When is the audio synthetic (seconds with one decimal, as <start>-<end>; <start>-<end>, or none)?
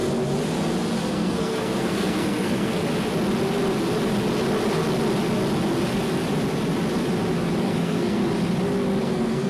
1.1-2.8; 7.6-8.2; 9.0-9.5